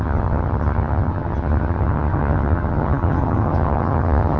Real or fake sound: fake